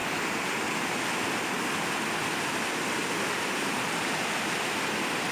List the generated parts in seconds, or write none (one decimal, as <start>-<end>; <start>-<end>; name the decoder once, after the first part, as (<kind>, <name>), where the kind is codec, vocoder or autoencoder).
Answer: none